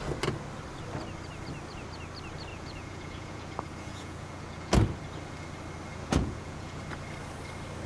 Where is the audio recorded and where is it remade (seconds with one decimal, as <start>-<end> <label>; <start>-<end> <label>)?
0.0-2.5 recorded; 2.5-4.7 remade; 4.7-5.9 recorded; 5.9-6.8 remade; 6.8-7.9 recorded